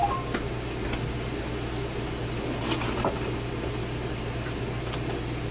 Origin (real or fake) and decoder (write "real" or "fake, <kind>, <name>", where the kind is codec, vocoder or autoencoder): real